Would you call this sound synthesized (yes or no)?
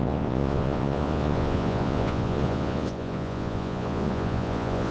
yes